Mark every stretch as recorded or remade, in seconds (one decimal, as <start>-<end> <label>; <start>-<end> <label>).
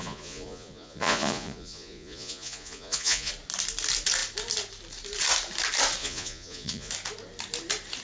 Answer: 0.0-3.3 remade; 3.3-6.0 recorded; 6.0-6.9 remade; 6.9-8.0 recorded